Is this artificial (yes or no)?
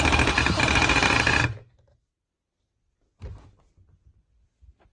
no